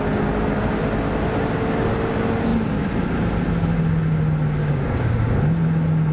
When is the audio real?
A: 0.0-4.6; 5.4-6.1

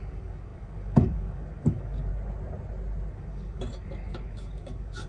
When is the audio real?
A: 2.1-3.1

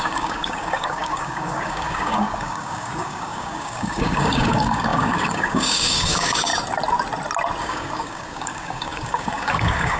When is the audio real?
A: 6.5-7.6

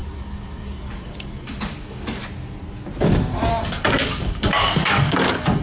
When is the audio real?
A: 2.2-3.5

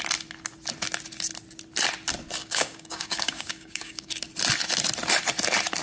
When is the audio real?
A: 0.0-2.4; 4.1-5.8

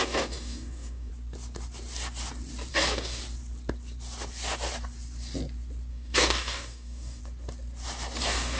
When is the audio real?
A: 1.1-2.7; 3.2-5.9; 7.2-8.2

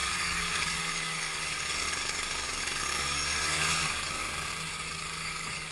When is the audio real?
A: 4.2-4.7

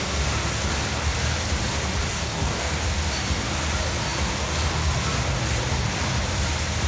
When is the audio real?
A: 0.0-2.1; 2.7-6.9